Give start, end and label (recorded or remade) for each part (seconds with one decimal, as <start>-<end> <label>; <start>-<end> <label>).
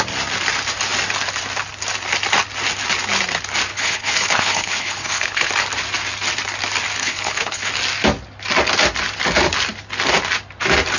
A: 0.0-3.7 recorded; 3.7-5.5 remade; 5.5-7.0 recorded; 7.0-7.7 remade; 7.7-11.0 recorded